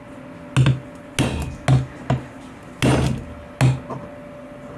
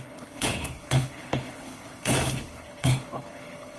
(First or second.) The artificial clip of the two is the second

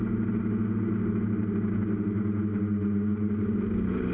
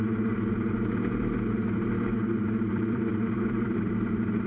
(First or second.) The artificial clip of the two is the second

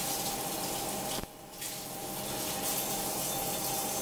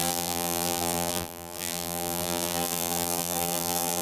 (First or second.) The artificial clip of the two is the second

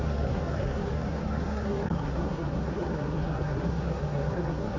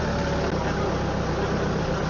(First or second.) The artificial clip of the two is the first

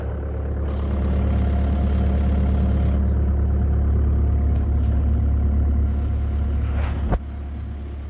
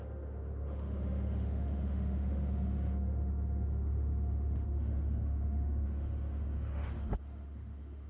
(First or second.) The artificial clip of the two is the second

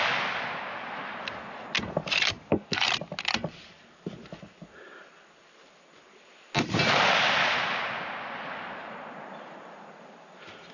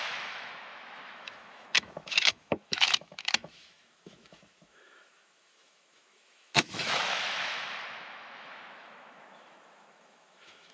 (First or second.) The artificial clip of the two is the second